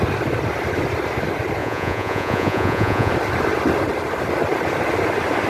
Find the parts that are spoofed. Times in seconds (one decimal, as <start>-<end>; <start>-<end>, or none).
1.6-3.1